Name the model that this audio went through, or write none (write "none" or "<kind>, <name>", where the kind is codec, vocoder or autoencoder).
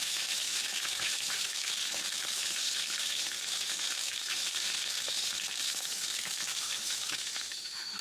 autoencoder, DAC-VAE